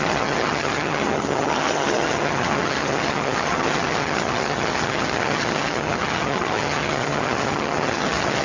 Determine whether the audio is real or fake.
fake